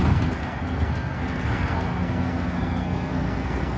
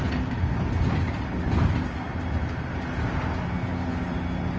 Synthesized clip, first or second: first